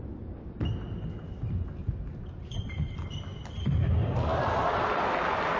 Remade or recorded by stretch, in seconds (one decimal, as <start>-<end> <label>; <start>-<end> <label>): 0.0-5.6 recorded